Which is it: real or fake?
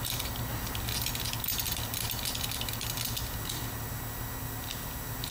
real